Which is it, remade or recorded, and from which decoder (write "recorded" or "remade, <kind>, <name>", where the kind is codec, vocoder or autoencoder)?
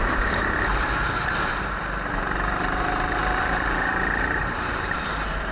remade, vocoder, BigVGAN v2